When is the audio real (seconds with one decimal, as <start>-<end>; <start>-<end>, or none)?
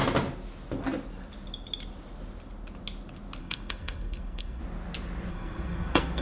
0.0-3.4; 4.6-5.3